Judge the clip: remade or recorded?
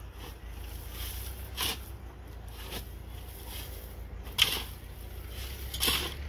recorded